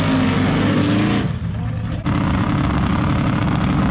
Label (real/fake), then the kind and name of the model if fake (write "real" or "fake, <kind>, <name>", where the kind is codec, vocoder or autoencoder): real